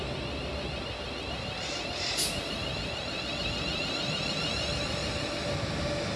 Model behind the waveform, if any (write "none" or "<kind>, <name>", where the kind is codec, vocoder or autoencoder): none